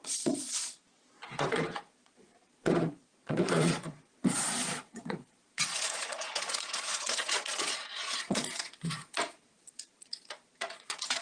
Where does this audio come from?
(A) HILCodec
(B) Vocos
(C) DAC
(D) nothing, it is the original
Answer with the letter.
B